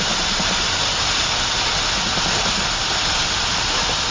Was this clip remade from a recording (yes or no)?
no